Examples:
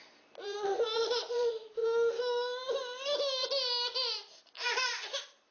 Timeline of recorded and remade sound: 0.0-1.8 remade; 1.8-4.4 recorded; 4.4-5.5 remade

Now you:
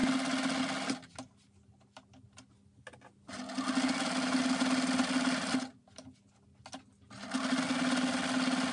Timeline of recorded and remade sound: 0.0-8.7 recorded

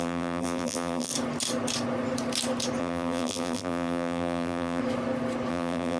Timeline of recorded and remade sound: 0.0-1.1 remade; 1.1-2.8 recorded; 2.8-4.8 remade; 4.8-5.5 recorded; 5.5-6.0 remade

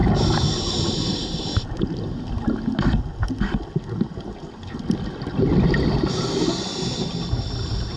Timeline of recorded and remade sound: 0.0-8.0 recorded

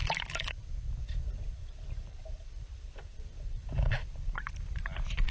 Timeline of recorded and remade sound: 0.0-0.5 remade; 0.5-1.6 recorded; 1.6-4.5 remade; 4.5-5.3 recorded

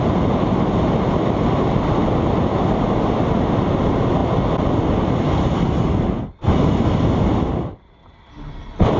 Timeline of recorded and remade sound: 0.0-9.0 recorded